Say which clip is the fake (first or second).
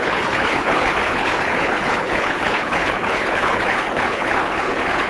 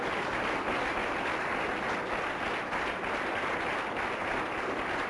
first